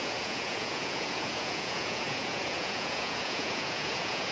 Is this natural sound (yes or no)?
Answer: no